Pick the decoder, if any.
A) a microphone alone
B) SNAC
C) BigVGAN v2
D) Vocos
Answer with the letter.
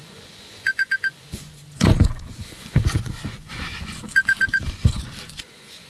D